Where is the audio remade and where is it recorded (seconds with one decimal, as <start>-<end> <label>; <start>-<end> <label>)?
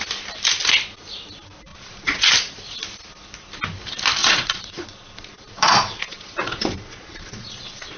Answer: 0.0-1.7 recorded; 1.7-2.3 remade; 2.3-4.2 recorded; 4.2-8.0 remade